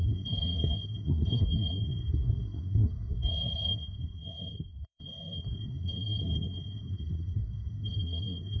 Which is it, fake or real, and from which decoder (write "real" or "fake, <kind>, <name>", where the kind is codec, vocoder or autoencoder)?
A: fake, codec, SNAC